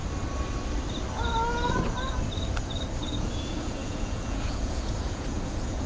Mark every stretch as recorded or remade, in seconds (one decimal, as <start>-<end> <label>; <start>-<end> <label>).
0.0-3.0 recorded; 3.0-5.9 remade